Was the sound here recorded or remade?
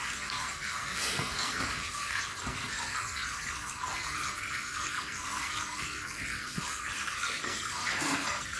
remade